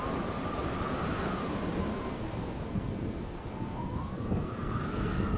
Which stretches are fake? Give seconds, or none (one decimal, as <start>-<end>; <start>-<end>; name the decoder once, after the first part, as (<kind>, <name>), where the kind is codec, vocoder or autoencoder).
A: 1.9-5.4 (codec, SNAC)